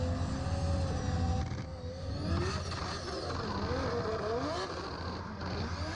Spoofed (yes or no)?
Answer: no